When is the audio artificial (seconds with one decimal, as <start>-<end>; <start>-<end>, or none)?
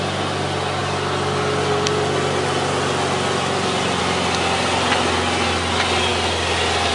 none